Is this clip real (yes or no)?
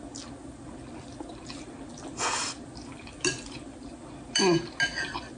yes